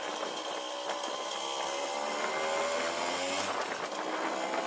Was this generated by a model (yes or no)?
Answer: no